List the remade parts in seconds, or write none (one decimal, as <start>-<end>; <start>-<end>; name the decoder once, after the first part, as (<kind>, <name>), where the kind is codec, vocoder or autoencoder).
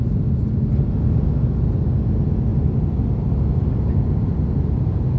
none